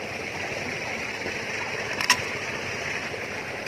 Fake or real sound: real